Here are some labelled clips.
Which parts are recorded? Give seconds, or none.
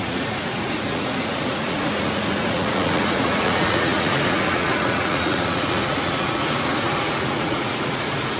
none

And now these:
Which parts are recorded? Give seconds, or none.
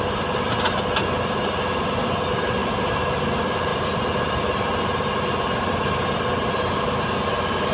0.0-7.7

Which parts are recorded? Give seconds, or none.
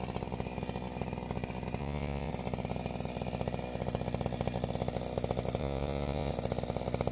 0.0-1.8; 2.3-5.6; 6.3-7.1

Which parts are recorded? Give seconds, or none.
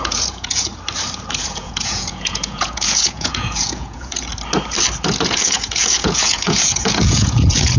0.7-1.3; 4.3-5.2